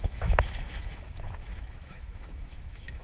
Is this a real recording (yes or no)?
no